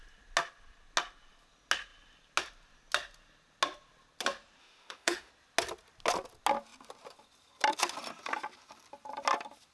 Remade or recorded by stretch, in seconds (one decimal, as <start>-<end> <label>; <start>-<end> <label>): 0.0-4.6 recorded; 4.6-5.3 remade; 5.3-9.7 recorded

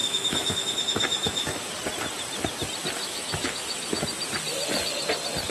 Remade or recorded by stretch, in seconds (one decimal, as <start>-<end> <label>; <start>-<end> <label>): 0.0-1.8 remade; 1.8-3.0 recorded; 3.0-4.0 remade; 4.0-5.5 recorded

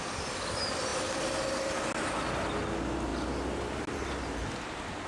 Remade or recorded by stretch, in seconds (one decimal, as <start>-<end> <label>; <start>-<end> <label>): 0.0-5.1 recorded